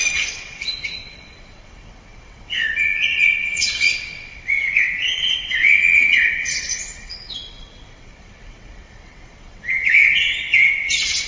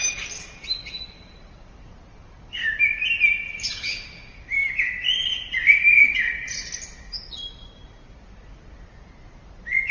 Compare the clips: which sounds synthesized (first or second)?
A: first